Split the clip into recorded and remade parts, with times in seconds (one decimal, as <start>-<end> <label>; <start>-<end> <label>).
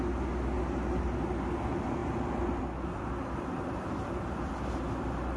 0.0-5.4 recorded